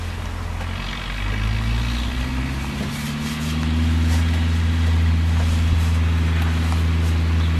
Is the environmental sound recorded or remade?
recorded